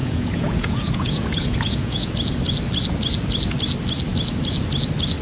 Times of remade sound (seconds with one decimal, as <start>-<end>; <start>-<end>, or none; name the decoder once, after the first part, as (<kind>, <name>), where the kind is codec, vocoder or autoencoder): 0.0-2.1 (vocoder, Vocos)